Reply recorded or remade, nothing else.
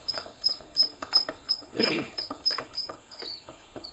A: remade